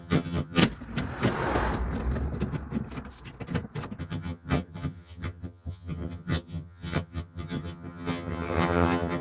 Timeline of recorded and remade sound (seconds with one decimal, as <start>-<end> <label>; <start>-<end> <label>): 0.0-0.6 remade; 0.6-4.0 recorded; 4.0-9.2 remade